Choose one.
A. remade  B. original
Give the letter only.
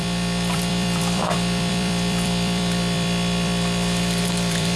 A